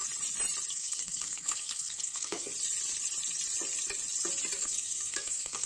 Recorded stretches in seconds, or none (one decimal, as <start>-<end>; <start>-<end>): 0.0-0.7; 2.5-4.6